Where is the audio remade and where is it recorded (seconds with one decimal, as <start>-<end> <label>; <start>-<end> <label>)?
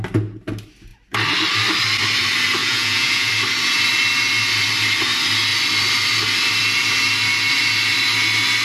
0.0-2.6 recorded; 2.6-3.3 remade; 3.3-8.6 recorded